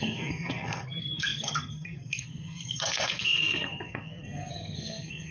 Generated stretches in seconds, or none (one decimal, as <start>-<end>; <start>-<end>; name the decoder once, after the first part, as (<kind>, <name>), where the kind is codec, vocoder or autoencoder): 0.0-5.3 (codec, SNAC)